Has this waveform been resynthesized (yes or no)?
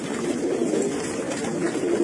no